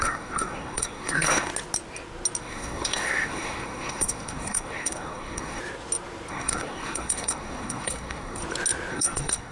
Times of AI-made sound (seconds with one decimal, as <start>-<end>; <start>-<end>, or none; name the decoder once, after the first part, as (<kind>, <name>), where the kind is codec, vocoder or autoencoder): 0.0-1.5 (codec, SNAC); 2.4-5.6; 6.3-8.4; 8.9-9.5